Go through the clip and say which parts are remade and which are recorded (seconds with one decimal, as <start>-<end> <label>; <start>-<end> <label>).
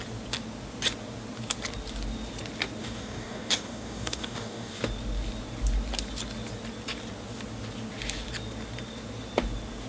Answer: 0.0-2.8 recorded; 2.8-4.8 remade; 4.8-9.9 recorded